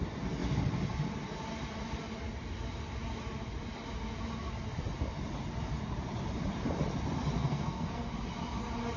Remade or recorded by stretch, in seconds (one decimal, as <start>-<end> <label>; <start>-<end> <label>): 0.0-7.4 recorded; 7.4-8.1 remade; 8.1-9.0 recorded